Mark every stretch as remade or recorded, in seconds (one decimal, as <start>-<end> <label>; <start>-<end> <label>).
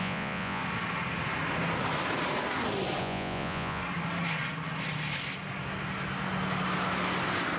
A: 0.0-0.6 remade; 0.6-3.0 recorded; 3.0-3.8 remade; 3.8-7.6 recorded